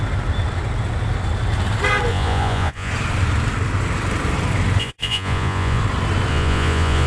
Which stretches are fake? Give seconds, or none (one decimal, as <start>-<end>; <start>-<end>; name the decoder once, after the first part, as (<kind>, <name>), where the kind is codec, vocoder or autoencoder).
2.1-2.9 (vocoder, Vocos); 4.8-5.8; 6.3-7.1

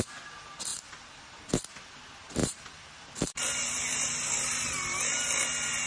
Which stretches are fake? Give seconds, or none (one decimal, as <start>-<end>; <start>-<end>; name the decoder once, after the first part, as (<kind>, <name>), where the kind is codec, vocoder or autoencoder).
0.7-1.6 (vocoder, BigVGAN v2); 2.4-5.0

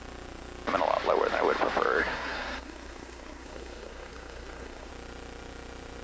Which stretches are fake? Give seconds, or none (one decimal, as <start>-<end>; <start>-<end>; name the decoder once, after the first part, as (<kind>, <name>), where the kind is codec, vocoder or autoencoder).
2.0-4.9 (codec, SNAC)

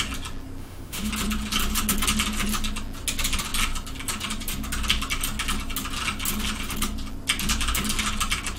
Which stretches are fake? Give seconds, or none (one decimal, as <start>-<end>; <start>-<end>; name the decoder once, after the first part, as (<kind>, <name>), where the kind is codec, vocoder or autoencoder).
0.6-1.1 (autoencoder, DAC-VAE)

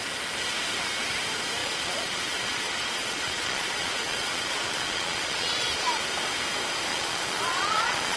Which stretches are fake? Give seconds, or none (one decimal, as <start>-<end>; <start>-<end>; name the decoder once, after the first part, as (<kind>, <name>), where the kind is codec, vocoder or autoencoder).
1.6-6.0 (vocoder, Vocos); 6.9-8.2

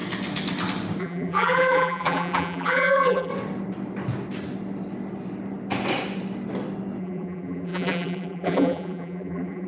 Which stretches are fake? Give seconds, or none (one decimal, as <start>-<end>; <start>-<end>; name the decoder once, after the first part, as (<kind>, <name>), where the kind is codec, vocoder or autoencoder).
1.0-3.3 (vocoder, BigVGAN v2); 7.0-9.7

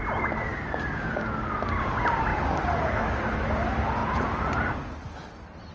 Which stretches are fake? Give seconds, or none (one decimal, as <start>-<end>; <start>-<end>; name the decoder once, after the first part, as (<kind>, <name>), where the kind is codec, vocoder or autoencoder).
4.0-4.5 (vocoder, Vocos)